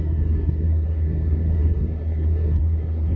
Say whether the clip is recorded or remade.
remade